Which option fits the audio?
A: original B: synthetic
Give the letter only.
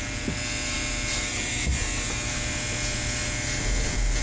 B